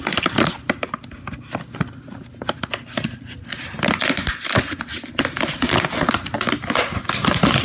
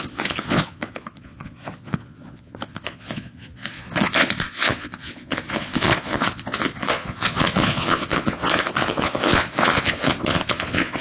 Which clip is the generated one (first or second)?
second